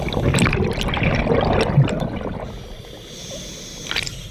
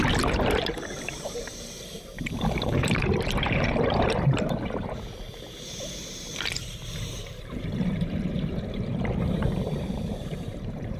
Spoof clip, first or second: second